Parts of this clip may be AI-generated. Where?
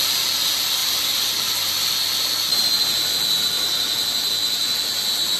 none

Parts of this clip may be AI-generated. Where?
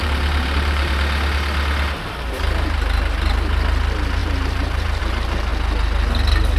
0.0-1.0 (vocoder, BigVGAN v2); 4.2-5.0